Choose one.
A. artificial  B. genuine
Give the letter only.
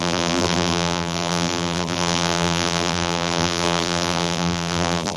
A